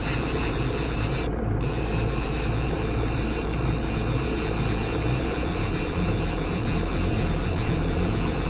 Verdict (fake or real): fake